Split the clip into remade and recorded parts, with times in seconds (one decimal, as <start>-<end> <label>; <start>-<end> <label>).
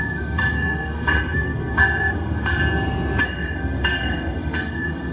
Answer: 0.0-2.6 remade; 2.6-3.2 recorded; 3.2-5.1 remade